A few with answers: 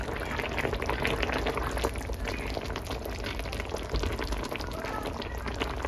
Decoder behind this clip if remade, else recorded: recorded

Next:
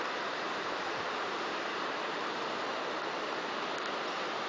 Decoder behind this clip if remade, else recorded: recorded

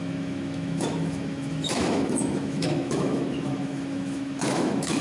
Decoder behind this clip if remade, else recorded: remade, autoencoder, DAC-VAE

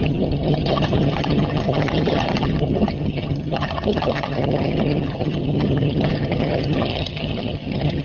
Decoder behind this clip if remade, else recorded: remade, vocoder, HiFi-GAN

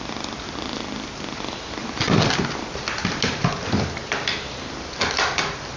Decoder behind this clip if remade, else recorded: recorded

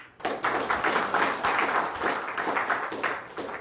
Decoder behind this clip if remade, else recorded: recorded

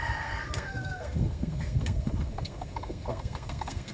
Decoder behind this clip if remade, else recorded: remade, codec, SNAC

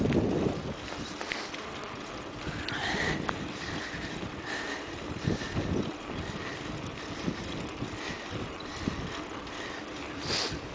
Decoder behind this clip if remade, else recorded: recorded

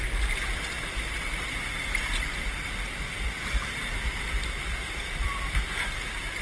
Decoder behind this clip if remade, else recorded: recorded